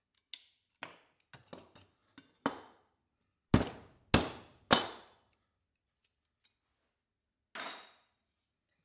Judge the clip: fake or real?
real